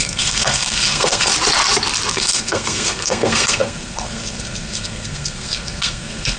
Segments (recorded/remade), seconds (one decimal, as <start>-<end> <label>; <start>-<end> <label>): 0.0-1.3 remade; 1.3-2.1 recorded; 2.1-6.4 remade